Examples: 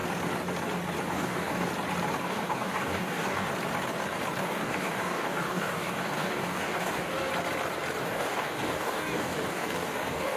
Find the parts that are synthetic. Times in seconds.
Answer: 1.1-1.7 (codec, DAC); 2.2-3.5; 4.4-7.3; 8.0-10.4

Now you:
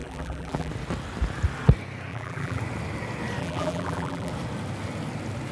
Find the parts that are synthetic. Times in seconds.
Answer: 0.0-0.7 (vocoder, BigVGAN v2); 2.1-2.6; 3.4-4.3

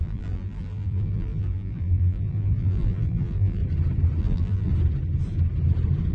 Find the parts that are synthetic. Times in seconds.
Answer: 0.0-3.6 (vocoder, BigVGAN v2); 4.2-4.7

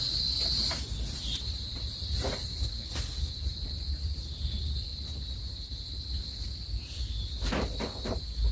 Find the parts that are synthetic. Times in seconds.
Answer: none

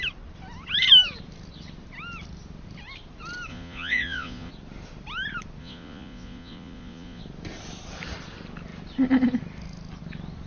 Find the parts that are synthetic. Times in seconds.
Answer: 3.5-4.5 (vocoder, Vocos); 5.6-7.2

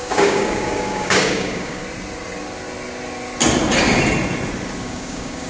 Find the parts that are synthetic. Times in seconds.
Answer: 0.0-1.8 (codec, DAC); 4.8-5.5

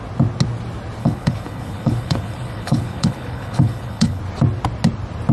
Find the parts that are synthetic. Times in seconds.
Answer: 1.0-4.2 (codec, HILCodec)

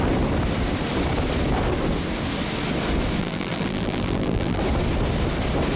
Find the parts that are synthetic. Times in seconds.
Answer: 3.2-4.6 (vocoder, BigVGAN v2)